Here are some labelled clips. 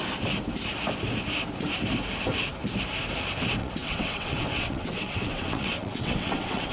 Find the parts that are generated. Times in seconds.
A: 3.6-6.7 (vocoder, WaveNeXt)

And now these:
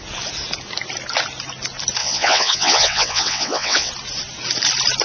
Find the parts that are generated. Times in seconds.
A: 2.0-3.9 (vocoder, WaveNeXt)

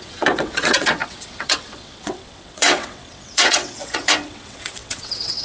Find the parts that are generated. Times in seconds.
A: 0.0-5.4 (vocoder, WaveNeXt)

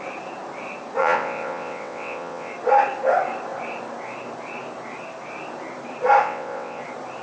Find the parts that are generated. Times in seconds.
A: 1.0-2.5 (vocoder, WaveNeXt); 6.2-6.8